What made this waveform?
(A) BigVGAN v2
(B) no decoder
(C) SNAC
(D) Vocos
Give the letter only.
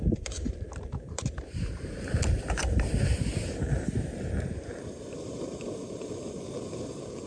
A